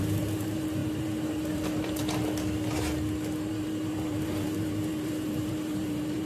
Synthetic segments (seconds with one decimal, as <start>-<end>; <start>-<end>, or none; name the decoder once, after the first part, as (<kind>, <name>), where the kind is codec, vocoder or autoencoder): 0.0-2.0 (vocoder, BigVGAN v2); 3.5-6.3